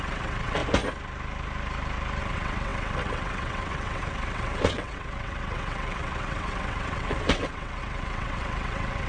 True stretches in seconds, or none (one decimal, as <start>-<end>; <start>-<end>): 0.6-2.2